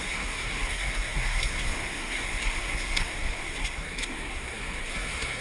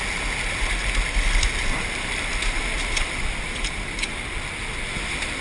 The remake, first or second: first